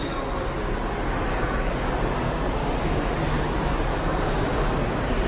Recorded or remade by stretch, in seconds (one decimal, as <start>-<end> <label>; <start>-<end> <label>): 0.0-1.3 recorded; 1.3-1.9 remade; 1.9-2.6 recorded; 2.6-3.1 remade; 3.1-3.9 recorded; 3.9-4.7 remade; 4.7-5.3 recorded